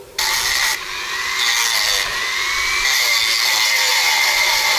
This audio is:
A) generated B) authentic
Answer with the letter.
B